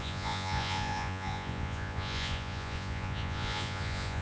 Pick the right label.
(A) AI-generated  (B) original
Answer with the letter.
A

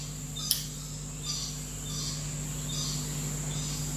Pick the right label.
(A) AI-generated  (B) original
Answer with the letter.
B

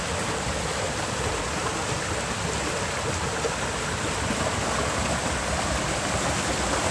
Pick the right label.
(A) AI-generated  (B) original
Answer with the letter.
B